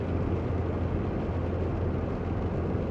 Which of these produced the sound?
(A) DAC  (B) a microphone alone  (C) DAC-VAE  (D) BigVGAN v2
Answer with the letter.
B